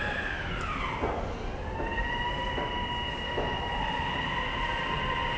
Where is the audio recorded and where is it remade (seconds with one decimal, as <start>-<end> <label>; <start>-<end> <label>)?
0.0-5.4 recorded